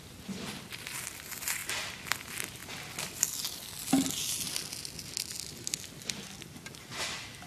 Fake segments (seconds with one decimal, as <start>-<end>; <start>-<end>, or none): none